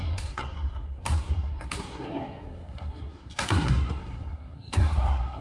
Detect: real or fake fake